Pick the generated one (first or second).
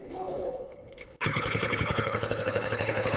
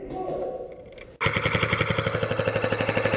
first